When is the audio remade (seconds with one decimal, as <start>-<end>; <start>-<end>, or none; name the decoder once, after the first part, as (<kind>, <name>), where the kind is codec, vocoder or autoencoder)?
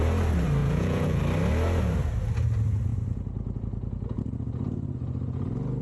0.6-1.2 (vocoder, Vocos)